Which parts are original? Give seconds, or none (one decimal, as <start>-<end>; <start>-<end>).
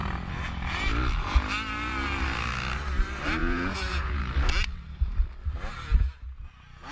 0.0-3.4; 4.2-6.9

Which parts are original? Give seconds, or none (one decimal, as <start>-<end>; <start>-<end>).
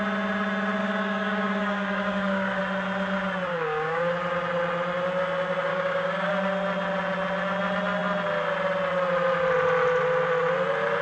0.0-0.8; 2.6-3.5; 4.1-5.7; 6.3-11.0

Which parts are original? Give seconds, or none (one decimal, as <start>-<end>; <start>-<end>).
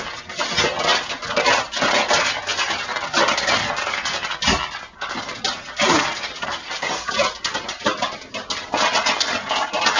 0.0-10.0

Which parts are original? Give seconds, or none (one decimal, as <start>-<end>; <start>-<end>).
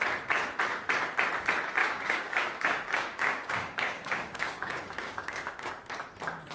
0.0-1.8; 5.7-6.5